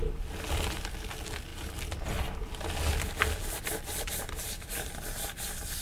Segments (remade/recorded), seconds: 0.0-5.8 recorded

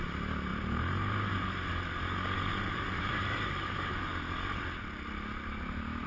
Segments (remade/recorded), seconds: 0.0-0.5 recorded; 0.5-1.7 remade; 1.7-2.5 recorded; 2.5-4.1 remade; 4.1-6.1 recorded

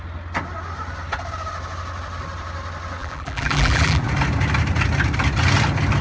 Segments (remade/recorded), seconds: 0.0-3.0 recorded; 3.0-4.0 remade; 4.0-6.0 recorded

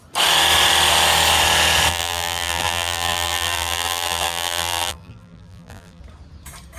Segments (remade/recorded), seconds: 0.0-1.9 recorded; 1.9-6.0 remade; 6.0-6.8 recorded

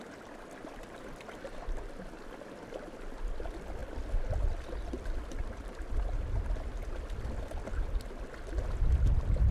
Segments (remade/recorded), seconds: 0.0-9.5 recorded

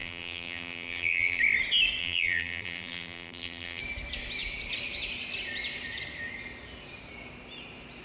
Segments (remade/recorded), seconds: 0.0-1.4 remade; 1.4-2.0 recorded; 2.0-3.8 remade; 3.8-8.0 recorded

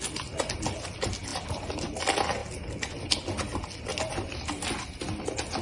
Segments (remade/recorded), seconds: 0.0-5.6 recorded

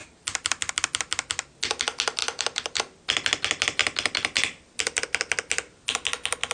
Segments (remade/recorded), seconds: 0.0-0.7 remade; 0.7-2.2 recorded; 2.2-2.8 remade; 2.8-6.5 recorded